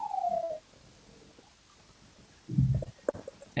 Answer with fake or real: real